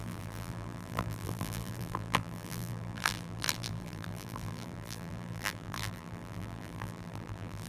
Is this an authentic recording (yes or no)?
no